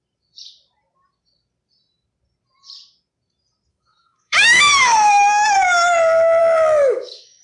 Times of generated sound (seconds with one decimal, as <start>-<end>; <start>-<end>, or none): 3.7-5.1; 6.4-7.4